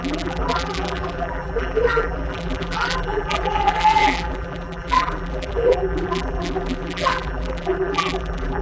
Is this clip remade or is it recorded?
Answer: remade